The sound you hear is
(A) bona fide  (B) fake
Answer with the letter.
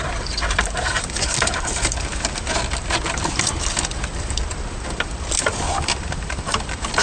B